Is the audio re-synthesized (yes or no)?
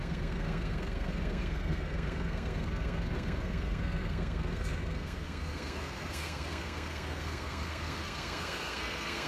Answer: yes